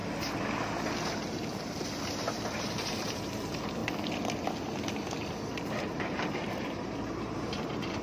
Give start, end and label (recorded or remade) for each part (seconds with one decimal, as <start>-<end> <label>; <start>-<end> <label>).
0.0-1.1 recorded; 1.1-3.8 remade; 3.8-5.3 recorded; 5.3-8.0 remade